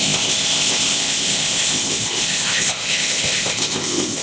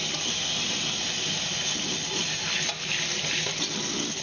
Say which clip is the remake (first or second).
first